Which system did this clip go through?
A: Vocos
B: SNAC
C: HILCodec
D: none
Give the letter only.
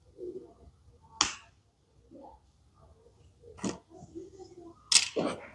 D